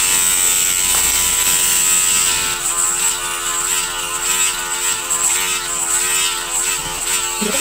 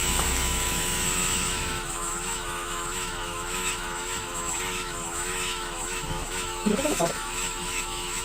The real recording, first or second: first